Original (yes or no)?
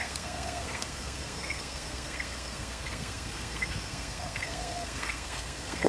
no